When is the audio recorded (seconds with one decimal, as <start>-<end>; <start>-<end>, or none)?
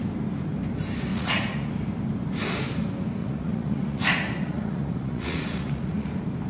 0.0-1.1; 1.7-3.2; 6.1-6.5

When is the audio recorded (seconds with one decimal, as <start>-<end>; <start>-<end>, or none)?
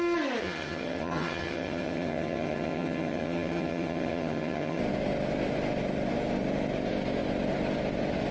0.0-0.4; 4.8-8.3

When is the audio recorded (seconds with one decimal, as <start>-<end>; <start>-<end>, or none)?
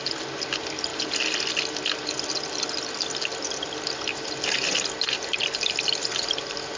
0.0-6.8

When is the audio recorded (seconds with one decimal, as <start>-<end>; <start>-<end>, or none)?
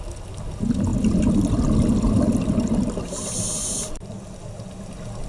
0.0-5.3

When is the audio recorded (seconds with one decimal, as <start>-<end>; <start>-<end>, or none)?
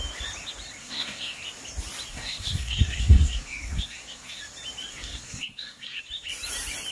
0.0-0.8; 1.4-2.1; 4.4-4.9; 6.0-6.9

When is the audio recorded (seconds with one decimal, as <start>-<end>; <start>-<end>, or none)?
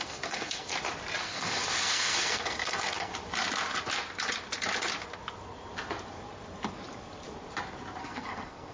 0.7-1.2; 3.1-8.0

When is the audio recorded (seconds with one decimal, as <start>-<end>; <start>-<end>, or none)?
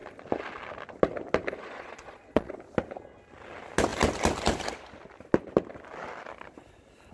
0.0-1.5; 2.5-7.1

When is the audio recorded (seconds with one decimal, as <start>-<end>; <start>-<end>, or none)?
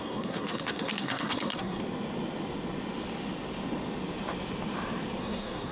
1.8-5.2